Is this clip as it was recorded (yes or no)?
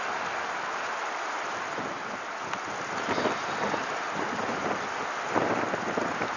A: yes